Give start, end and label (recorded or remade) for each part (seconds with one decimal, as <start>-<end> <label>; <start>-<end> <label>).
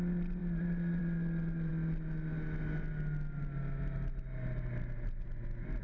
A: 0.0-5.8 recorded